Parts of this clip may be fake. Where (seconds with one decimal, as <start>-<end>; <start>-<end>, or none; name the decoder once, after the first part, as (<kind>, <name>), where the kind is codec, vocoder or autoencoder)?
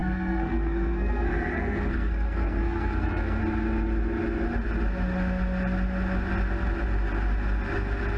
0.0-3.4 (codec, SNAC)